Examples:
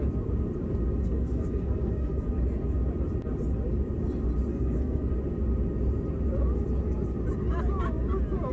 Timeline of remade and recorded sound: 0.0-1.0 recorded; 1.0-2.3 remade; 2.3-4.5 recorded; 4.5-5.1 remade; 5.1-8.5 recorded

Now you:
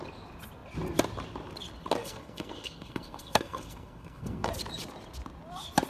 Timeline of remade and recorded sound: 0.0-2.0 recorded; 2.0-4.5 remade; 4.5-5.9 recorded

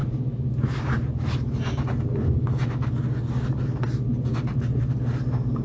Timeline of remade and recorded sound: 0.0-5.6 recorded

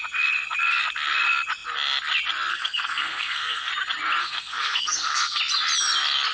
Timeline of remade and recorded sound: 0.0-2.5 recorded; 2.5-3.7 remade; 3.7-4.2 recorded; 4.2-5.4 remade; 5.4-6.3 recorded

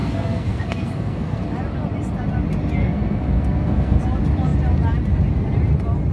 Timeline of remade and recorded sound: 0.0-1.4 remade; 1.4-2.8 recorded; 2.8-4.0 remade; 4.0-6.1 recorded

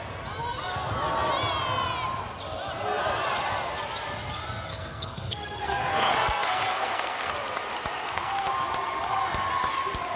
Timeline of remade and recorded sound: 0.0-4.7 recorded; 4.7-7.3 remade; 7.3-8.0 recorded; 8.0-8.5 remade; 8.5-10.2 recorded

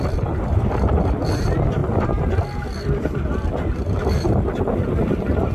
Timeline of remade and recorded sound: 0.0-5.5 recorded

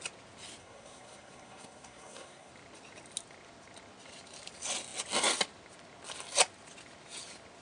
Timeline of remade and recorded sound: 0.0-0.6 recorded; 0.6-2.5 remade; 2.5-7.6 recorded